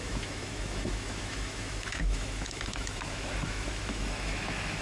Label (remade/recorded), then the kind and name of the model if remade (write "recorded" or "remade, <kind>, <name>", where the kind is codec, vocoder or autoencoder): remade, autoencoder, DAC-VAE